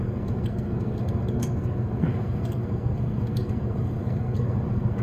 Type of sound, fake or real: fake